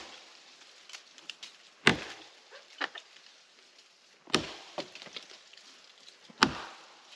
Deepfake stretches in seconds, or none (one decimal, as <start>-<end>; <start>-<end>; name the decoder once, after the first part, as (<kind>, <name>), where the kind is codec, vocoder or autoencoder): 1.9-4.6 (vocoder, BigVGAN v2)